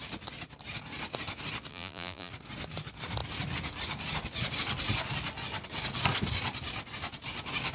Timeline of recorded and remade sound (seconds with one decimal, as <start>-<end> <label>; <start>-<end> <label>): 0.0-1.7 recorded; 1.7-2.3 remade; 2.3-7.7 recorded